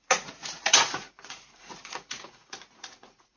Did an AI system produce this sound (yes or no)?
yes